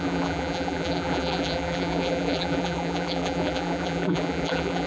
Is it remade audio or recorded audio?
remade